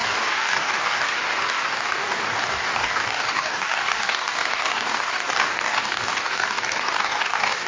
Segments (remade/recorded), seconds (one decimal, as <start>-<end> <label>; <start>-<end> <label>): 0.0-7.7 remade